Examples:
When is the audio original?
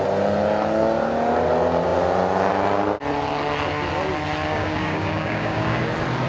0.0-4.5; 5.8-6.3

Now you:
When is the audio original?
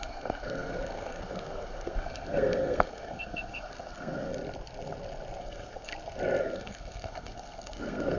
4.3-5.4; 5.9-6.4